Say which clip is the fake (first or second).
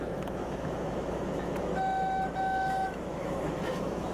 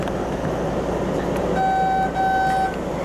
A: first